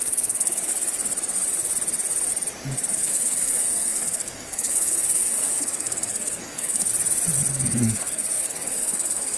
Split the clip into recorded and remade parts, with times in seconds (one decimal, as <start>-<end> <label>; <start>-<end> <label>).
0.0-0.7 remade; 0.7-2.9 recorded; 2.9-6.9 remade; 6.9-7.5 recorded; 7.5-9.4 remade